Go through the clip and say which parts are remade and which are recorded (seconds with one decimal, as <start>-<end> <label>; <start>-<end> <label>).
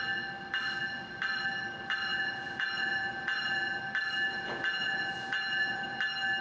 0.0-2.1 recorded; 2.1-3.8 remade; 3.8-4.3 recorded; 4.3-6.0 remade; 6.0-6.4 recorded